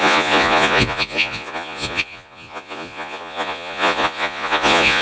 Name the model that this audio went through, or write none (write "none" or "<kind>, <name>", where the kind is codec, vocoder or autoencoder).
vocoder, Vocos